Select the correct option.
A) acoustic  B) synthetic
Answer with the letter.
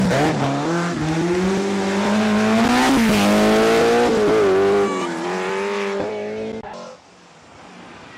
A